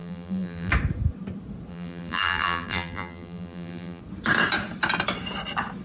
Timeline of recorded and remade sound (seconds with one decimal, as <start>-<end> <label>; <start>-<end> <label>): 0.0-0.7 remade; 0.7-1.7 recorded; 1.7-4.0 remade; 4.0-5.8 recorded